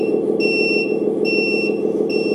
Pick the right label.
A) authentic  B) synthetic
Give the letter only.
A